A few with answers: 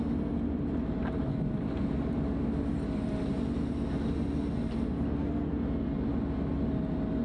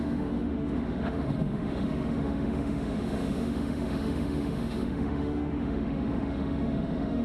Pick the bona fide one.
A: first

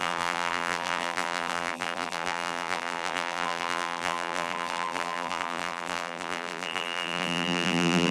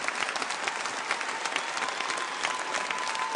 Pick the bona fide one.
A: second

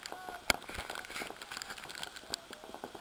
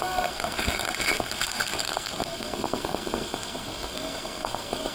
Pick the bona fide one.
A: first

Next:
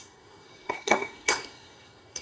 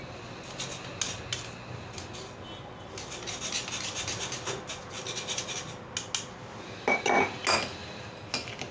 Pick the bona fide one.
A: second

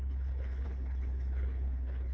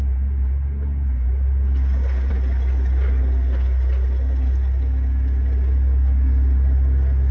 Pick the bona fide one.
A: second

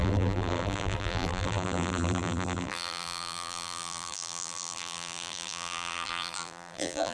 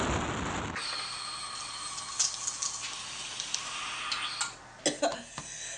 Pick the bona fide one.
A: second